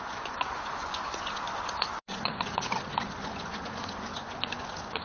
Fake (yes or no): yes